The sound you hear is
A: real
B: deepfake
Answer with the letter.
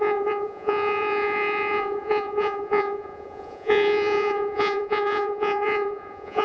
B